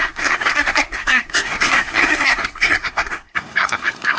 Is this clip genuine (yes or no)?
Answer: no